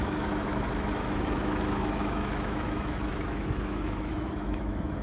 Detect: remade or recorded remade